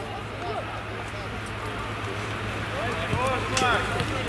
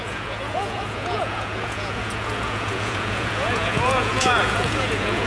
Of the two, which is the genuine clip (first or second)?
first